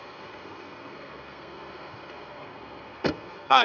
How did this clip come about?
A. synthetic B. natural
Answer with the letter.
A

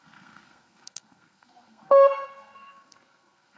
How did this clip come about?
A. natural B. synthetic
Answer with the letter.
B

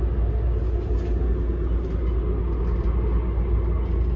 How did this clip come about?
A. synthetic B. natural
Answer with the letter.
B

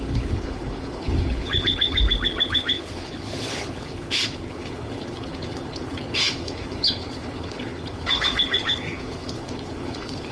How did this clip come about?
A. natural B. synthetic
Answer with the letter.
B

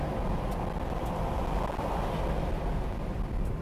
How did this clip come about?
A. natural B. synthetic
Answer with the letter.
A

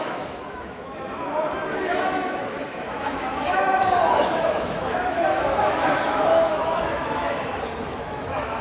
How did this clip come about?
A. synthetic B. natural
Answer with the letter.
A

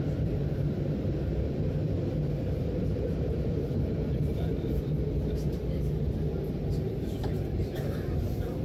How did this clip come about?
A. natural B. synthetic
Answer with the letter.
B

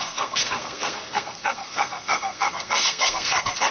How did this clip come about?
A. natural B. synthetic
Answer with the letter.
B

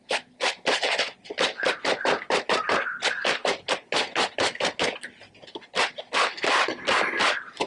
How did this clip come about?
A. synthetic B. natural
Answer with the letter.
B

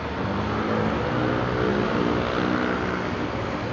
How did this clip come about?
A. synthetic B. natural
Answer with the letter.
B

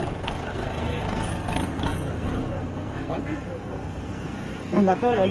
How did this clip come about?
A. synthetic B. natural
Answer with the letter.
A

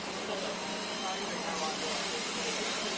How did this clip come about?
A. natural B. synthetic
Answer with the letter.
A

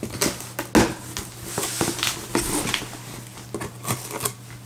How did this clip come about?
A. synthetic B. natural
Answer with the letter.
B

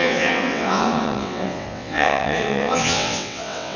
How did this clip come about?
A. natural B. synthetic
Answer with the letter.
B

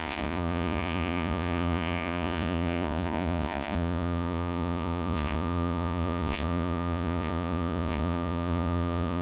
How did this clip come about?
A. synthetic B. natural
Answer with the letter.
A